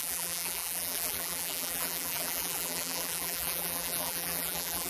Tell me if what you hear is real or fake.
fake